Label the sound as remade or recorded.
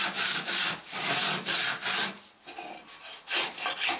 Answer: recorded